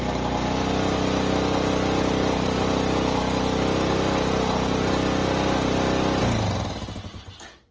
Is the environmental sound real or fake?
real